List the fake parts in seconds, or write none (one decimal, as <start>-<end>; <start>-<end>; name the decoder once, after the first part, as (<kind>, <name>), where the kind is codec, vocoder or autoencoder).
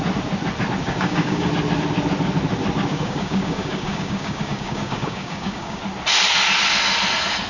0.8-1.5 (codec, DAC); 2.9-5.8